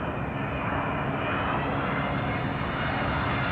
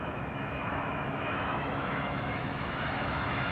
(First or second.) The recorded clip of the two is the first